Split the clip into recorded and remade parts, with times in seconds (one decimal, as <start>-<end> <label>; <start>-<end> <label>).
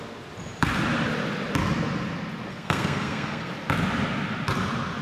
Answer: 0.0-2.5 recorded; 2.5-3.5 remade; 3.5-5.0 recorded